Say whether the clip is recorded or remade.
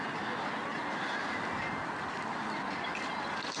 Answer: recorded